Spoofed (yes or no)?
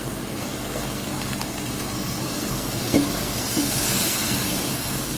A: yes